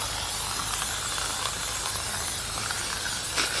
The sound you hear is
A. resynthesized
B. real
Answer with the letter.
B